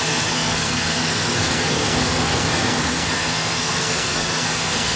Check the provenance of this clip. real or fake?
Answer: fake